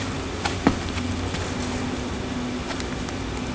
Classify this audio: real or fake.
real